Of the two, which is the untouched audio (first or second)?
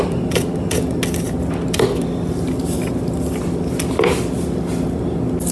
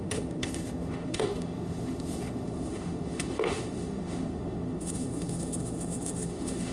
first